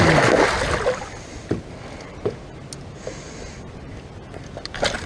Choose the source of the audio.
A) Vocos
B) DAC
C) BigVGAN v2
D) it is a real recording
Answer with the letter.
D